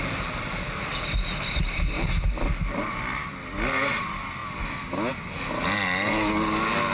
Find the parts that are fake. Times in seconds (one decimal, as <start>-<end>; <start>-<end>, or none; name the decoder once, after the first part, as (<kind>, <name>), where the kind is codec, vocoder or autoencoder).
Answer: 0.0-3.3 (vocoder, BigVGAN v2)